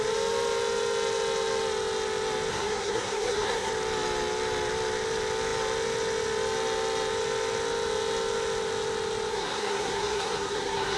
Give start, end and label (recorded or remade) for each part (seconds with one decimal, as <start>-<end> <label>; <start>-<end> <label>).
0.0-2.5 recorded; 2.5-3.7 remade; 3.7-9.3 recorded; 9.3-11.0 remade